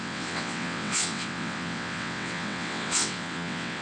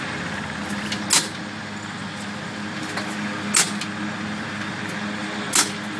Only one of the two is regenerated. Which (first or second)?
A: first